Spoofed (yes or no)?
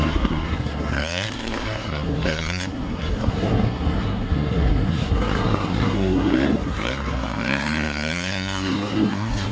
yes